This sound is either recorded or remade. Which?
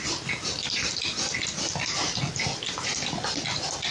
recorded